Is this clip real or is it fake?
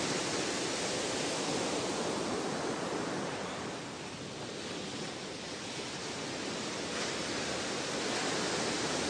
real